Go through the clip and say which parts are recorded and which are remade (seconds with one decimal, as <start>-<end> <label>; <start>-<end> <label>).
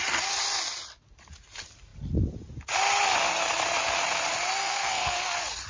0.0-4.6 recorded; 4.6-5.2 remade; 5.2-5.7 recorded